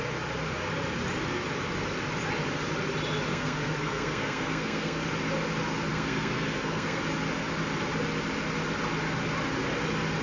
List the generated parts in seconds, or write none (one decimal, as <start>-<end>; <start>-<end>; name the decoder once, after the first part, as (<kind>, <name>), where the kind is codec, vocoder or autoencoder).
3.3-5.0 (codec, SNAC); 5.9-7.0